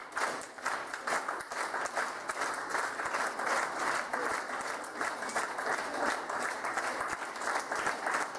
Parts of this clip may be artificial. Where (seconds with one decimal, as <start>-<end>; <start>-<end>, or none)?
none